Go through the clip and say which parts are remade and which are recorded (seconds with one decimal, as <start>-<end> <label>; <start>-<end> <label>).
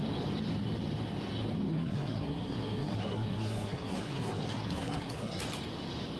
0.0-1.7 recorded; 1.7-5.4 remade; 5.4-6.2 recorded